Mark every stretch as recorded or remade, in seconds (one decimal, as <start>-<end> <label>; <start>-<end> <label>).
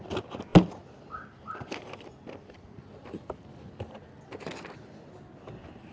0.0-5.9 recorded